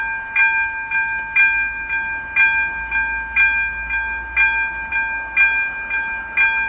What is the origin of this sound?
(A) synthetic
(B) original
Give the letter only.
B